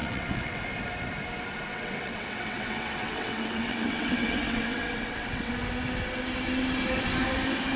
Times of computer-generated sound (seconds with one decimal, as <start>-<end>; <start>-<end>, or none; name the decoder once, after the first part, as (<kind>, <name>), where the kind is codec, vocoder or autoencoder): 0.0-0.6 (vocoder, WaveNeXt); 1.7-5.5